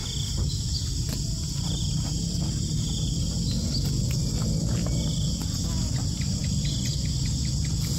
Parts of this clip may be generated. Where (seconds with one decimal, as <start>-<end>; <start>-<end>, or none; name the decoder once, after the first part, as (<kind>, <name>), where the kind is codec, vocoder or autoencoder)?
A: none